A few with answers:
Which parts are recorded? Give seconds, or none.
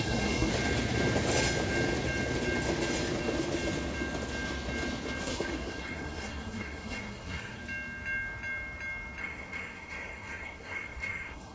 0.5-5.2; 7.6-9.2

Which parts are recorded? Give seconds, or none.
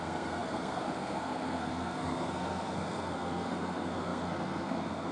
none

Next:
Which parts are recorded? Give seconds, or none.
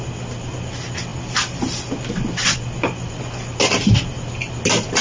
0.0-5.0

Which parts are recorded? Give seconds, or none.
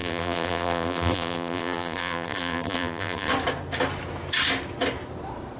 3.3-5.6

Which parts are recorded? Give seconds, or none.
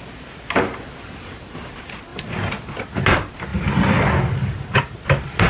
0.0-0.7; 1.7-5.5